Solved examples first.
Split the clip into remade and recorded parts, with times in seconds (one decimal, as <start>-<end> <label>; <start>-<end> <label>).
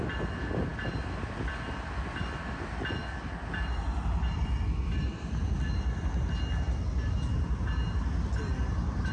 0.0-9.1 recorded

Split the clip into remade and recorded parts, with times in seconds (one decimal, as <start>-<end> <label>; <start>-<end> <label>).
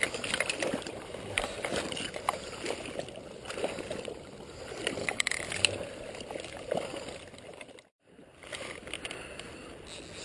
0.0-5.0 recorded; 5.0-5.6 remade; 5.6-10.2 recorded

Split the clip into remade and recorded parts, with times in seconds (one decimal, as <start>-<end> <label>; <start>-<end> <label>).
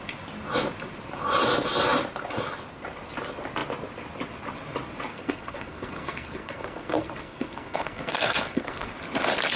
0.0-5.1 recorded; 5.1-8.9 remade; 8.9-9.6 recorded